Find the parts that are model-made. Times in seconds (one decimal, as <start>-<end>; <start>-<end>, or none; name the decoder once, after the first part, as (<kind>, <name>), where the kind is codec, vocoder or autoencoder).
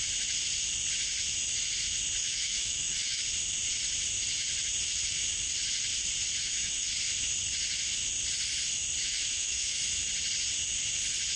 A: 2.2-3.2 (autoencoder, DAC-VAE); 6.4-6.9; 9.0-9.8